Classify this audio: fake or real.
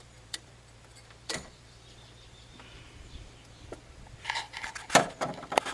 fake